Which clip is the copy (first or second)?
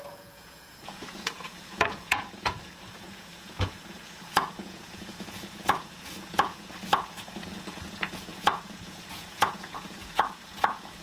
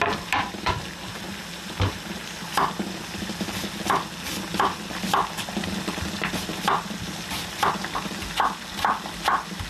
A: first